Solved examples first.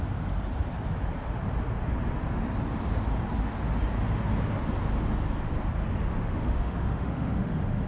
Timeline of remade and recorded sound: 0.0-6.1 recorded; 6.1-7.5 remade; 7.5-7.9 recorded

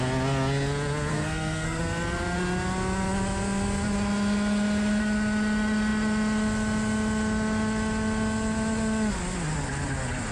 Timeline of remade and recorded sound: 0.0-1.1 recorded; 1.1-1.8 remade; 1.8-10.3 recorded

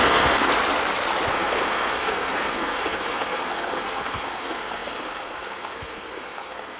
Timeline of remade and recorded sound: 0.0-0.5 remade; 0.5-1.3 recorded; 1.3-6.8 remade

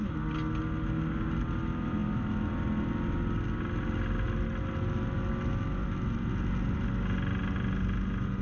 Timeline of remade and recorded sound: 0.0-8.4 recorded

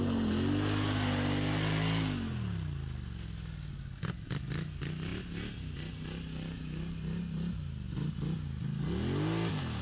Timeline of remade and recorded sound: 0.0-9.8 recorded

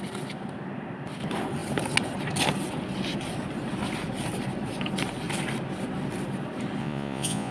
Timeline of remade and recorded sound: 0.0-6.8 recorded; 6.8-7.5 remade

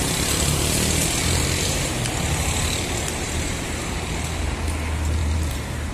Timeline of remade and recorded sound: 0.0-1.2 recorded; 1.2-3.8 remade; 3.8-5.2 recorded; 5.2-5.9 remade

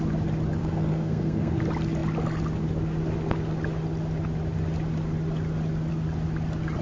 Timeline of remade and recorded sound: 0.0-0.6 recorded; 0.6-1.6 remade; 1.6-6.8 recorded